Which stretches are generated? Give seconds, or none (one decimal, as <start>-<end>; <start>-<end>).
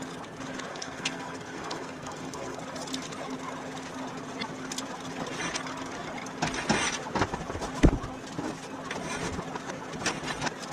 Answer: 0.7-2.6